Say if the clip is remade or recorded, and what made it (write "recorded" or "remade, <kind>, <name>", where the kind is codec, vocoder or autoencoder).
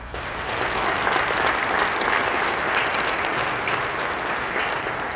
remade, vocoder, BigVGAN v2